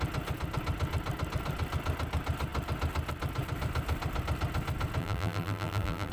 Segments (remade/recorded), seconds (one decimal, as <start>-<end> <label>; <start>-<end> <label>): 0.0-5.0 recorded; 5.0-6.1 remade